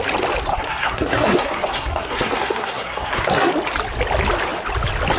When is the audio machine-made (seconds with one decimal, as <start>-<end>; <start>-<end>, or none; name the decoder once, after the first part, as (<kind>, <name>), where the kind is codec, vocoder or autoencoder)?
0.5-3.5 (codec, SNAC)